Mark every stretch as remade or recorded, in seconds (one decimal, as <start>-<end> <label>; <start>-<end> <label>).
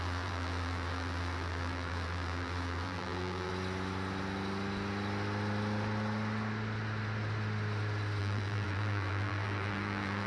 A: 0.0-3.5 remade; 3.5-8.2 recorded; 8.2-10.3 remade